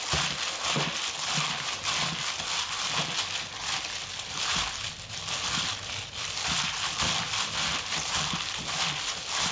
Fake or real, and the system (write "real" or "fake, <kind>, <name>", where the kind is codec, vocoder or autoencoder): real